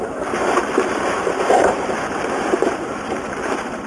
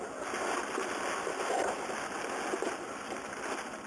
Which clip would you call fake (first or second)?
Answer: first